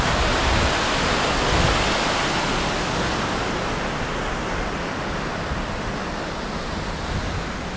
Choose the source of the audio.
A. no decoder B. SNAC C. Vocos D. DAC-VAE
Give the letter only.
A